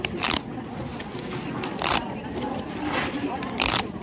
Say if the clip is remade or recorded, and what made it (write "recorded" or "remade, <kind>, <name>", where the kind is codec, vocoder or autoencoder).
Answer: recorded